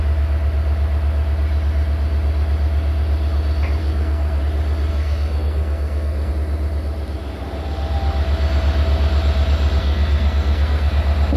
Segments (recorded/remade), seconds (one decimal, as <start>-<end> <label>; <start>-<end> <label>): 0.0-3.8 recorded; 3.8-4.4 remade; 4.4-4.9 recorded; 4.9-6.3 remade; 6.3-9.8 recorded; 9.8-10.9 remade; 10.9-11.4 recorded